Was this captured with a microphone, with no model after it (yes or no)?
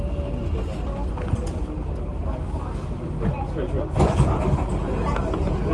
yes